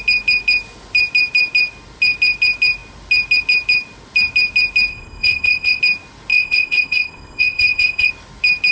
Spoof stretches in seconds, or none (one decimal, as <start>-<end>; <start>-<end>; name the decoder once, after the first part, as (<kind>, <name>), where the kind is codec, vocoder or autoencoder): 4.9-5.8 (codec, ZipCodec); 6.3-8.1